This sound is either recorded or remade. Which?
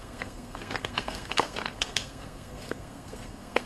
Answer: remade